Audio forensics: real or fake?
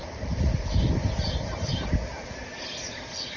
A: real